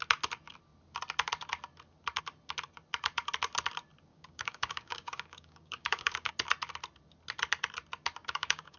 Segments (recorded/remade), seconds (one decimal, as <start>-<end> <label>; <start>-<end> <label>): 0.0-4.1 recorded; 4.1-6.3 remade; 6.3-8.2 recorded; 8.2-8.8 remade